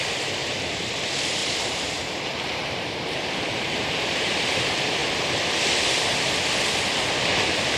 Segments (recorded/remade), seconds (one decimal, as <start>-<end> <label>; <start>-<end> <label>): 0.0-0.4 recorded; 0.4-0.9 remade; 0.9-1.4 recorded; 1.4-4.4 remade; 4.4-7.8 recorded